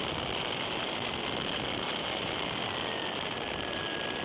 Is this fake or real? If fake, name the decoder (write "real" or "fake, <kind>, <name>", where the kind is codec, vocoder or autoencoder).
real